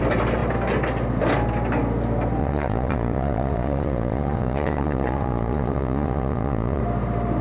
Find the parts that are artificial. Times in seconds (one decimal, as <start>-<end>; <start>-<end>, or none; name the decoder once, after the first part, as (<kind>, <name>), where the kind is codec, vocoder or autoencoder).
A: 2.4-6.8 (vocoder, Vocos)